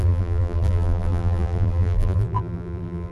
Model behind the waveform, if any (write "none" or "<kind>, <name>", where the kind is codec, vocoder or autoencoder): vocoder, BigVGAN v2